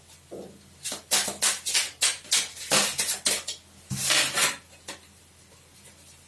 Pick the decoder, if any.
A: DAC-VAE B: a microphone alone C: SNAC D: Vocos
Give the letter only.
B